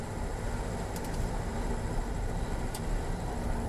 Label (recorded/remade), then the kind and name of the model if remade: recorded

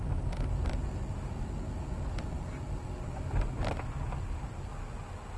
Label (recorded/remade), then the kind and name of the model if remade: recorded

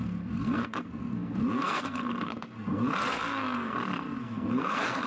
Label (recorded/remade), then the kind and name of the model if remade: remade, codec, SNAC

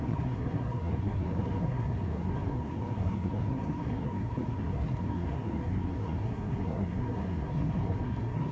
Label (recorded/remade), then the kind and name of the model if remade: remade, codec, SNAC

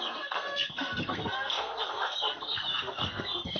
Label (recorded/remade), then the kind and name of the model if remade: remade, codec, SNAC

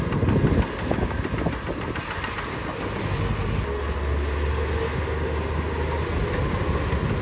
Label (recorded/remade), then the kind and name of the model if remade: recorded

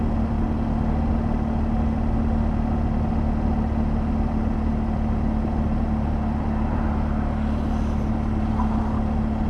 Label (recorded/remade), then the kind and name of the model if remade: recorded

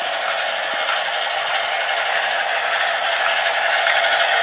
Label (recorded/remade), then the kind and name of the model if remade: recorded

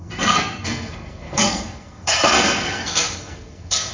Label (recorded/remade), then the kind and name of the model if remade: remade, codec, SNAC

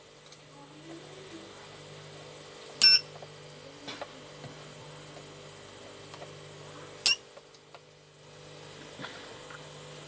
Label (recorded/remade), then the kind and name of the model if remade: recorded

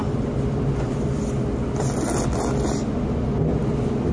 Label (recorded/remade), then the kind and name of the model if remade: recorded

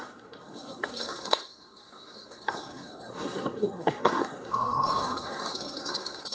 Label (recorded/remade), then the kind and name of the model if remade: remade, codec, SNAC